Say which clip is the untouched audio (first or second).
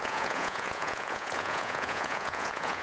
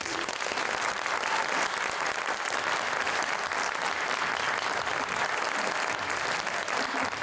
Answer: second